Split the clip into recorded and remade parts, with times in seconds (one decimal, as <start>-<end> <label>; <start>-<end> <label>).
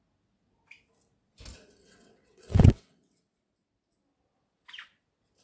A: 0.0-1.8 recorded; 1.8-3.2 remade; 3.2-5.4 recorded